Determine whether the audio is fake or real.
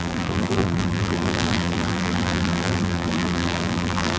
fake